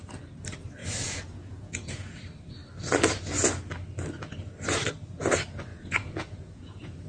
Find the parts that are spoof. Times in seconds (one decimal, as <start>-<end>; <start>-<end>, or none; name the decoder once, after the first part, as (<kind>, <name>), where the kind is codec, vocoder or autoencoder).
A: 0.8-2.1 (vocoder, Vocos); 5.7-7.1